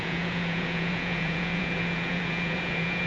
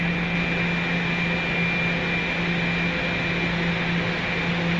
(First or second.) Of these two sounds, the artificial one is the first